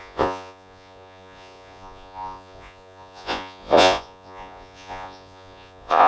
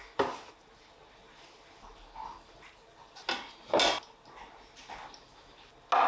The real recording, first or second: second